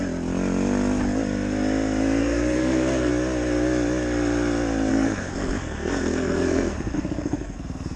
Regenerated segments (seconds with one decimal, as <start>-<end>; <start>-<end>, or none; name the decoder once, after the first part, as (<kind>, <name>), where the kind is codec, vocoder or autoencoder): 2.2-3.1 (codec, SNAC); 4.9-8.0

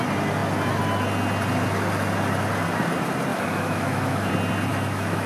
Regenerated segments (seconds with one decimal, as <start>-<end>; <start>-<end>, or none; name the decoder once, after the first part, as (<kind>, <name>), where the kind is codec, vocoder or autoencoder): 3.3-4.3 (autoencoder, DAC-VAE); 4.7-5.3

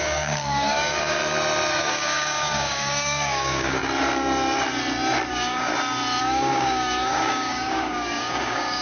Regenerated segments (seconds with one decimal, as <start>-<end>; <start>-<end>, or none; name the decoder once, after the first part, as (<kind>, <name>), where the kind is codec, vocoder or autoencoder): 0.0-1.2 (codec, DAC); 1.8-3.8; 5.3-5.7; 6.2-8.8

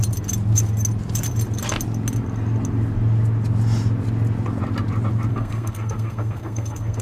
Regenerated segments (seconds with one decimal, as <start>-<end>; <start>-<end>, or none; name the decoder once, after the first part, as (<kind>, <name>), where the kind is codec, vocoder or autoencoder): 5.3-7.0 (codec, SNAC)

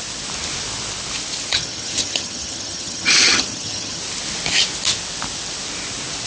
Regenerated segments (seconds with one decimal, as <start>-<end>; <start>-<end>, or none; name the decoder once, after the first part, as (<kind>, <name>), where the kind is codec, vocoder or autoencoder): 1.5-4.0 (vocoder, HiFi-GAN)